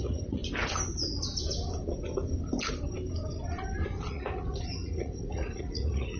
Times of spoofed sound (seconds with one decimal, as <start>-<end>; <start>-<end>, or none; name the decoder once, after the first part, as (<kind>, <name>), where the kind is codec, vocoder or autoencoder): 0.0-0.4 (vocoder, Vocos); 4.1-6.2

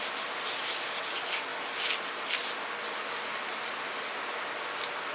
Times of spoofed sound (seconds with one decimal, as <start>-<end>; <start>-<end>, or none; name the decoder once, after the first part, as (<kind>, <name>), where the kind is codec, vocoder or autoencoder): none

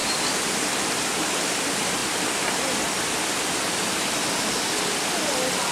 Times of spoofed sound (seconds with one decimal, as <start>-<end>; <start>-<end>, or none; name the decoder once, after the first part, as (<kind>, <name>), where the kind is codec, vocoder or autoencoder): none

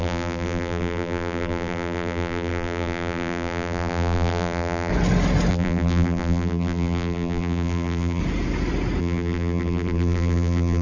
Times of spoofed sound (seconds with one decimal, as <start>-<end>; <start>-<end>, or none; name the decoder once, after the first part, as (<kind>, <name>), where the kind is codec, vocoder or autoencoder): 0.0-4.9 (vocoder, BigVGAN v2); 5.5-8.2; 9.0-10.8

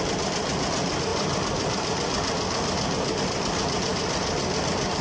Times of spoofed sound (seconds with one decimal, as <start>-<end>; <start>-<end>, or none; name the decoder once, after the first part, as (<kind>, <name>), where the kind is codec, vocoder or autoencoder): none

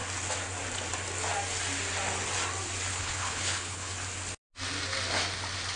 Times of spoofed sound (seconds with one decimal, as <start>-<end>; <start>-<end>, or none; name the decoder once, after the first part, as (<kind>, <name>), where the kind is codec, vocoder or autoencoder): 2.9-3.9 (codec, HILCodec)

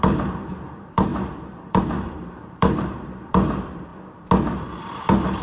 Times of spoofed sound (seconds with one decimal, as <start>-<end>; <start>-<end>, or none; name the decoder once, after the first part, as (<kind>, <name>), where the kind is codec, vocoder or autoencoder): 0.0-3.9 (vocoder, BigVGAN v2); 4.8-5.4

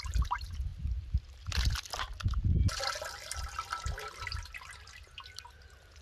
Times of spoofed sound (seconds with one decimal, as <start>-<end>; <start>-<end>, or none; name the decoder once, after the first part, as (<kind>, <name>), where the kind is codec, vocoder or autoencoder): none